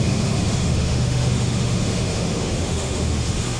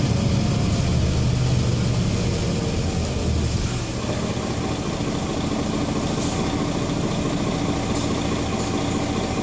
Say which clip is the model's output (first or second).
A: first